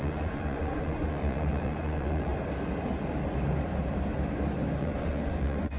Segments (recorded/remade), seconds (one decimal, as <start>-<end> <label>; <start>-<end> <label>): 0.0-2.3 remade; 2.3-4.8 recorded; 4.8-5.8 remade